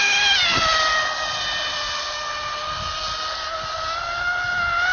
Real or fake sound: real